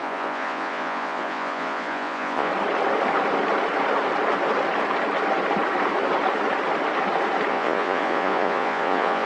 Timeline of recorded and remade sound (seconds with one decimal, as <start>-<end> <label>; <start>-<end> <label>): 0.0-2.5 remade; 2.5-7.5 recorded; 7.5-9.3 remade